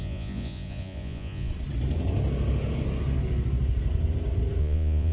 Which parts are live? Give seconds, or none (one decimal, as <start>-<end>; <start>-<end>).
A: 1.5-4.6